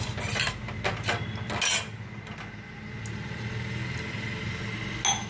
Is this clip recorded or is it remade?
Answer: recorded